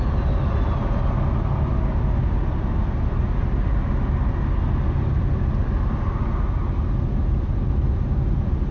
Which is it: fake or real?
real